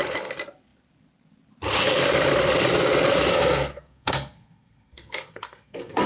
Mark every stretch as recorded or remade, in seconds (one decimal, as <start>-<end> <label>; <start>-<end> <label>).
0.0-3.3 recorded; 3.3-6.1 remade